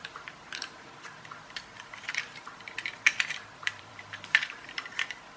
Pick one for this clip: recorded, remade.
remade